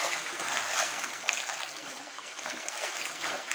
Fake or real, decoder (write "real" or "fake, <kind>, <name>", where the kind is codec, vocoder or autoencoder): fake, codec, SNAC